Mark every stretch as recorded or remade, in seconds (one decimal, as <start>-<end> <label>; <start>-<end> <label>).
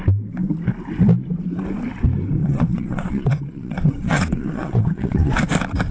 0.0-2.4 recorded; 2.4-5.4 remade; 5.4-5.9 recorded